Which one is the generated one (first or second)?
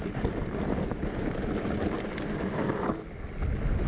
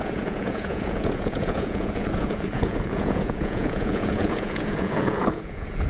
second